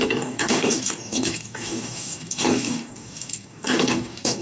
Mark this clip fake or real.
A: fake